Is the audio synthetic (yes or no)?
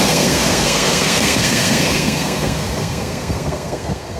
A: yes